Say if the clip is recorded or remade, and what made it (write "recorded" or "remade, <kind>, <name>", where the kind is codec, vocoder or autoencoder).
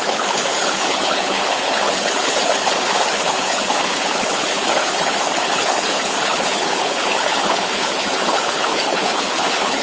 remade, codec, HILCodec